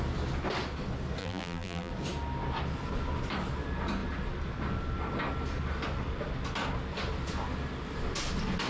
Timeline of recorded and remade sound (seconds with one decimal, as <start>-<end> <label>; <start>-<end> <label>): 0.0-1.2 recorded; 1.2-1.9 remade; 1.9-8.7 recorded